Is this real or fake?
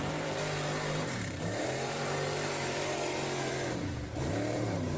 fake